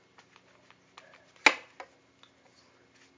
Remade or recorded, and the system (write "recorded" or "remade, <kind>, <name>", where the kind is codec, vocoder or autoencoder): recorded